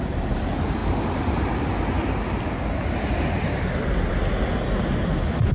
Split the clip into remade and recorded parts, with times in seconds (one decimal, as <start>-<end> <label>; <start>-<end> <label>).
0.0-5.5 recorded